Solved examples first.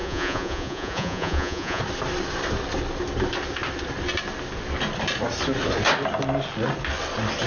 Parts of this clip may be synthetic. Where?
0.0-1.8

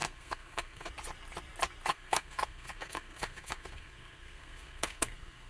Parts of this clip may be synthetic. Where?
0.0-0.9; 1.9-5.5

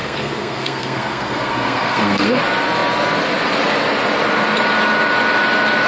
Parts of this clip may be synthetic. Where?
0.0-2.4

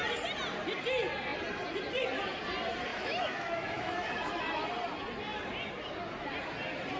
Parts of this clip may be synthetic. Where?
2.9-4.4

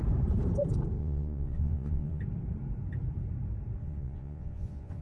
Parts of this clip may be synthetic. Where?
1.0-2.2; 3.8-5.0

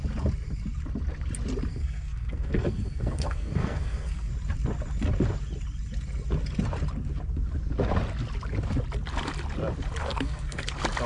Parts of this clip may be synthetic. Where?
1.7-4.3; 10.0-10.6

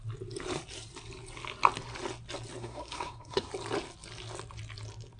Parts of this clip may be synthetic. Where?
2.6-3.5